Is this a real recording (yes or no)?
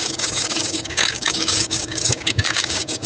no